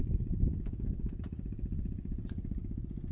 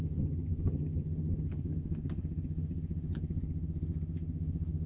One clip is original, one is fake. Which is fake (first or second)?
second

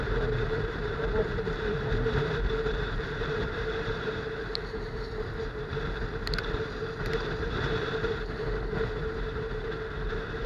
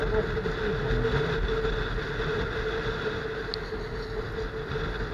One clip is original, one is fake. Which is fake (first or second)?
first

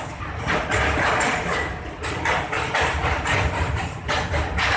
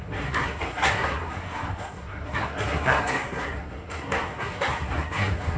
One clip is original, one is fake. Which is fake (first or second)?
second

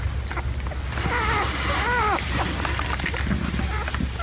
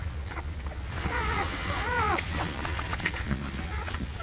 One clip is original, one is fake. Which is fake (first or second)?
second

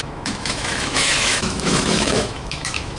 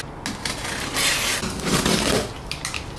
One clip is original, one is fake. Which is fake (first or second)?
first